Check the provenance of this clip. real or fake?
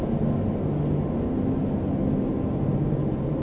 real